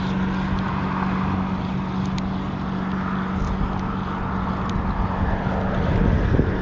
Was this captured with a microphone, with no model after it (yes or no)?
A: yes